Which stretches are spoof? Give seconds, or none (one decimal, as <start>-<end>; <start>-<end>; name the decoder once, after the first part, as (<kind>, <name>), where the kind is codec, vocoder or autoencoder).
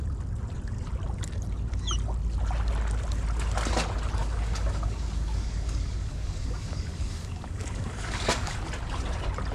4.2-8.6 (codec, DAC)